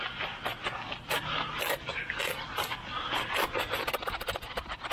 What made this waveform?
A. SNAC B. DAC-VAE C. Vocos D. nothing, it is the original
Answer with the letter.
D